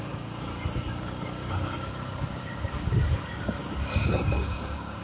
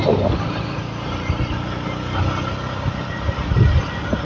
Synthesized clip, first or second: first